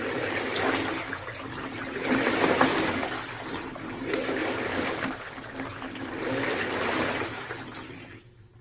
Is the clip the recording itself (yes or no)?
yes